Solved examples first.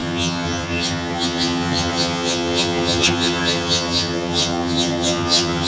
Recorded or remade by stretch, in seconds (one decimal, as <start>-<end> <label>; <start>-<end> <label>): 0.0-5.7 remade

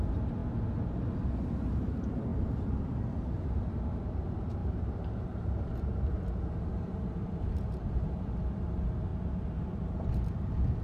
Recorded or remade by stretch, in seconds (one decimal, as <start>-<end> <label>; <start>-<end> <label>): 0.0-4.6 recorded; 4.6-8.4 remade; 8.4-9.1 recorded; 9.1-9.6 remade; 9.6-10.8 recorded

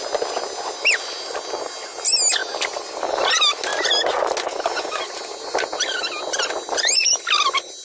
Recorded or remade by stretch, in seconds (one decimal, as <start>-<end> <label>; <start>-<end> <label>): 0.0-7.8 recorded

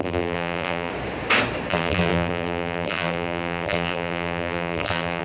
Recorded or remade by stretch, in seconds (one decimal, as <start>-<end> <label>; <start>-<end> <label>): 0.0-0.9 remade; 0.9-1.7 recorded; 1.7-5.2 remade